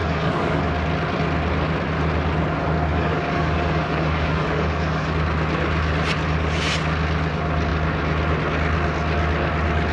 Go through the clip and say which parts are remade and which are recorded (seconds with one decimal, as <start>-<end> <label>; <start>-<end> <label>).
0.0-0.6 remade; 0.6-2.9 recorded; 2.9-5.1 remade; 5.1-9.9 recorded